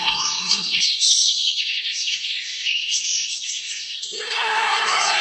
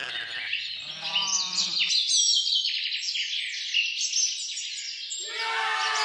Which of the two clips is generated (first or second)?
first